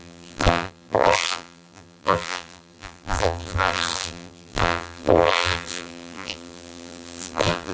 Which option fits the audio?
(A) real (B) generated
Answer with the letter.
B